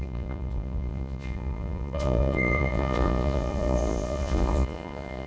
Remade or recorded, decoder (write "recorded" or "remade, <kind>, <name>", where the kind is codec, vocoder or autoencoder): remade, vocoder, Vocos